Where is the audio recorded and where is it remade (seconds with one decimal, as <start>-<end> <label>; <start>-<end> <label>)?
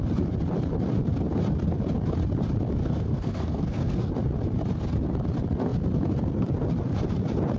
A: 0.0-2.8 recorded; 2.8-4.1 remade; 4.1-7.6 recorded